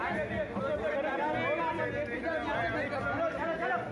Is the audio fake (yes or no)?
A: no